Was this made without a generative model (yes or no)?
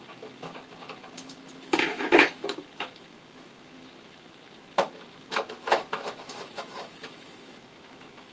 no